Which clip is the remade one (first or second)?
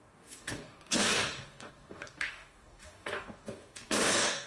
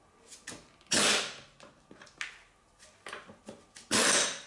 first